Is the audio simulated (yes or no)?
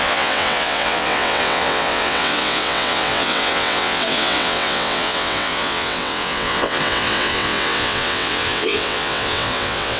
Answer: yes